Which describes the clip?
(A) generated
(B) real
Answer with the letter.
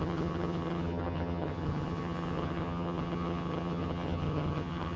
A